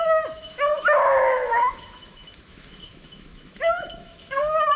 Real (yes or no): no